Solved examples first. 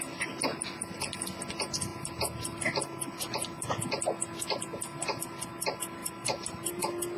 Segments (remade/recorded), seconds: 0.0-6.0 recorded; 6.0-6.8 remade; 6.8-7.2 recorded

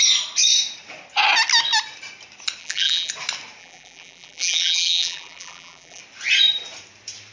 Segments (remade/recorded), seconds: 0.0-2.6 recorded; 2.6-3.1 remade; 3.1-3.6 recorded; 3.6-6.0 remade; 6.0-7.3 recorded

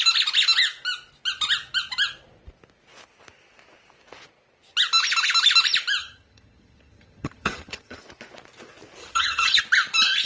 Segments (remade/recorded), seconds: 0.0-6.0 recorded; 6.0-8.0 remade; 8.0-9.0 recorded; 9.0-9.6 remade; 9.6-10.3 recorded

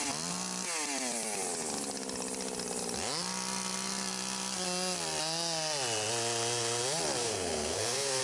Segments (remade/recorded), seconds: 0.0-7.2 recorded; 7.2-8.2 remade